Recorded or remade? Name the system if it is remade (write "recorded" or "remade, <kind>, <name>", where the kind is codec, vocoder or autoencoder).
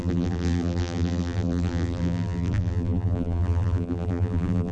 remade, vocoder, BigVGAN v2